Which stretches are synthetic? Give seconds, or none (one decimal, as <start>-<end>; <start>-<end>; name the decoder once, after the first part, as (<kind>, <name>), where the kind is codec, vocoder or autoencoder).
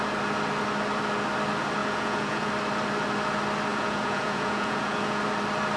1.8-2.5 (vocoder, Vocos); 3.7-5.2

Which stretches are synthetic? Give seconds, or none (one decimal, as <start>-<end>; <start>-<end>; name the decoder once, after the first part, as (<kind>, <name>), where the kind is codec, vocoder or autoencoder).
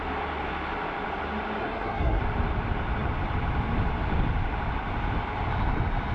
1.6-2.2 (codec, SNAC)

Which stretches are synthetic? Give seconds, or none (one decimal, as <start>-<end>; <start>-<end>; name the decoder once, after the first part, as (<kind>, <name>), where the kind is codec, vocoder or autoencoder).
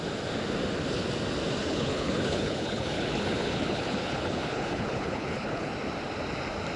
1.6-5.7 (codec, HILCodec)